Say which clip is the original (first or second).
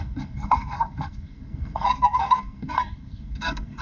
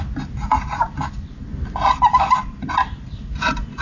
second